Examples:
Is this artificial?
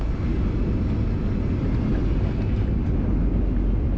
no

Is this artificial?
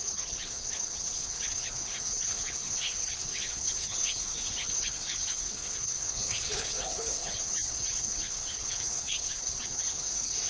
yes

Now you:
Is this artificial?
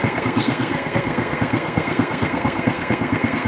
yes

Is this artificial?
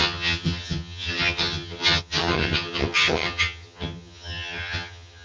yes